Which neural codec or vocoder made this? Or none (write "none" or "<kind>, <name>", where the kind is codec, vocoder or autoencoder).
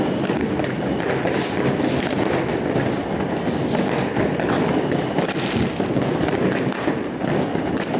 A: none